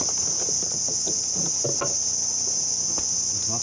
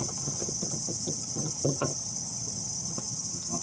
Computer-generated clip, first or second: second